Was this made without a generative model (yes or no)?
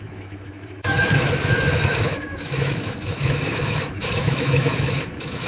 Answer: no